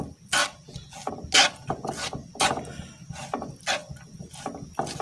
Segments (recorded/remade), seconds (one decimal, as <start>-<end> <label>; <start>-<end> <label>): 0.0-0.4 recorded; 0.4-1.1 remade; 1.1-5.0 recorded